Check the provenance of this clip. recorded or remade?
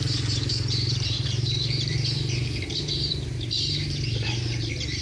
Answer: remade